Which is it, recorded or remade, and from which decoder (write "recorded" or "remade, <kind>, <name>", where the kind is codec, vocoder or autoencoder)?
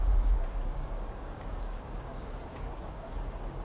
remade, codec, DAC